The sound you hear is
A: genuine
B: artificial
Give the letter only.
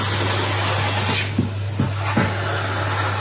A